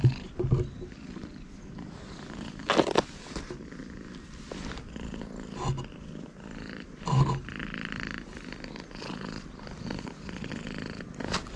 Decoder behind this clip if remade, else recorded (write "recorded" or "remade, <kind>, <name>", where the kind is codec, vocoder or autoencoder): recorded